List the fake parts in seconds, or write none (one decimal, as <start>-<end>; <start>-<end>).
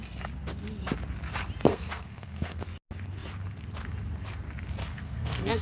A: 1.7-2.6; 4.8-5.6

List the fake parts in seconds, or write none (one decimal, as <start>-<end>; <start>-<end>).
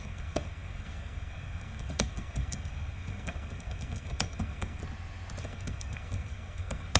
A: 0.0-4.8; 5.4-7.0